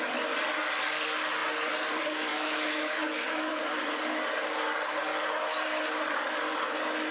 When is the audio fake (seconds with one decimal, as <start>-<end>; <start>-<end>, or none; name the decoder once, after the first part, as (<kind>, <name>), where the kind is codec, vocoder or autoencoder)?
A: 2.3-3.5 (autoencoder, DAC-VAE)